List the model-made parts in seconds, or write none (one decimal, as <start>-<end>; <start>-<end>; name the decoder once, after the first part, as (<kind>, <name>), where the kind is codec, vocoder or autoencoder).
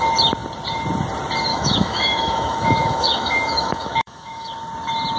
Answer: 1.5-4.5 (autoencoder, DAC-VAE)